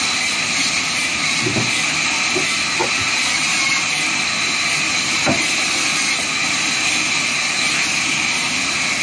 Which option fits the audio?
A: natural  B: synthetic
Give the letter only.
A